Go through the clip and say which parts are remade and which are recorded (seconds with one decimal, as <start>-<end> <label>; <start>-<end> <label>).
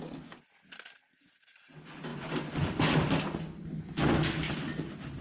0.0-5.2 recorded